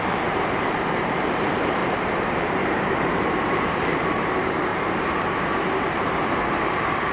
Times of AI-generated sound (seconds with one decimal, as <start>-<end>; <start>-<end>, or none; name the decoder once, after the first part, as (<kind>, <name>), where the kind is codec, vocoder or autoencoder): 0.0-4.7 (vocoder, BigVGAN v2); 5.6-7.1